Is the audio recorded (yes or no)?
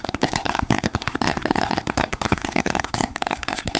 no